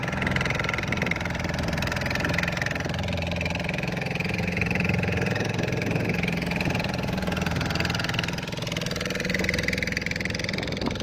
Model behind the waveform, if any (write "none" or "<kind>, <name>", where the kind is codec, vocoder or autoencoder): none